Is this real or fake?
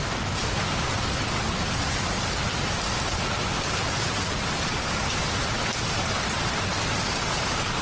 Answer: real